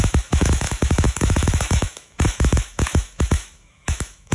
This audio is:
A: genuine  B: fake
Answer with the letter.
B